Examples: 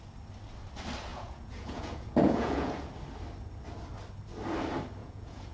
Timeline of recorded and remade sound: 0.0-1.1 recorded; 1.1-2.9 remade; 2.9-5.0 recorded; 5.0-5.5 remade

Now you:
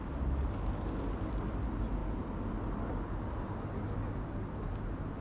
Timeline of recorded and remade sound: 0.0-5.2 recorded